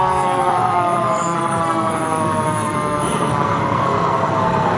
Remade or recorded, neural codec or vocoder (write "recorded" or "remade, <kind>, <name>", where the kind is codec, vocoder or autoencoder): remade, codec, SNAC